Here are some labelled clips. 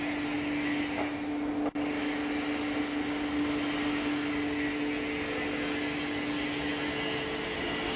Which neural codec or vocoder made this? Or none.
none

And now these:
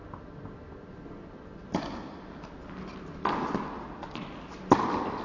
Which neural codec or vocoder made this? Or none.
none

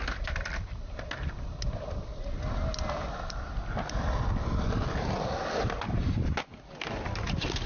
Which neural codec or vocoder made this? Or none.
none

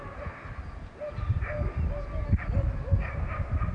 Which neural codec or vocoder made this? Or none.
none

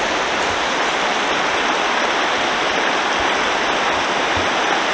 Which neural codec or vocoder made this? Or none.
none